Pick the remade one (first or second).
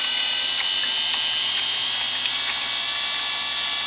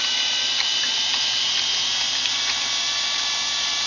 second